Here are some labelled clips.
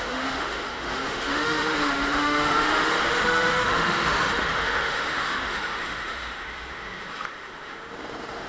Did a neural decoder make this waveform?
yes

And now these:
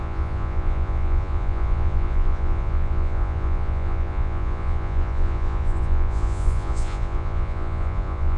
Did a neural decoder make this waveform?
yes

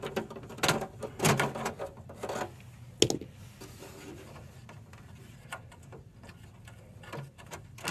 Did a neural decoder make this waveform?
no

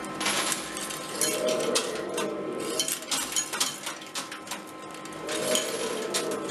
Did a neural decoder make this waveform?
no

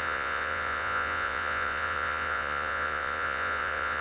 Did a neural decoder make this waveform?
yes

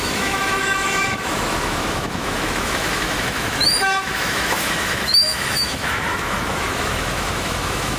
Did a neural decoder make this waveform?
yes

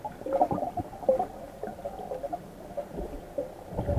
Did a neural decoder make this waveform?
yes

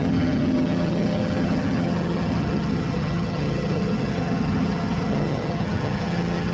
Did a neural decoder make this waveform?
yes